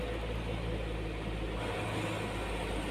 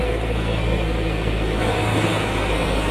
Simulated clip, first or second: second